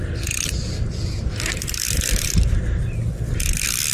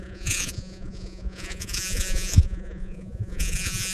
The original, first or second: first